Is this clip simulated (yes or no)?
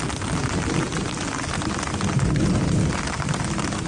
no